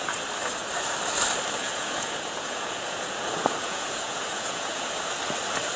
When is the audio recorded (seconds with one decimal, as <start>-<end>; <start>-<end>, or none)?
0.0-1.6; 5.1-5.8